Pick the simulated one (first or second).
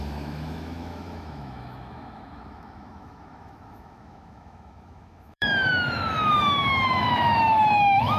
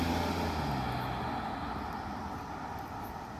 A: first